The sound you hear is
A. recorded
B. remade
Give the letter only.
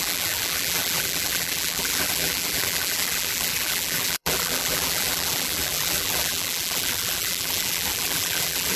B